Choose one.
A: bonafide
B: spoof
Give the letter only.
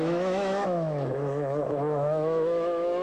B